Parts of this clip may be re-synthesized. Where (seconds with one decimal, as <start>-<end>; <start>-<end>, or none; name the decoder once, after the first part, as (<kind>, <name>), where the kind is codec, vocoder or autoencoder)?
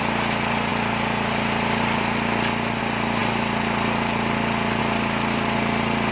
none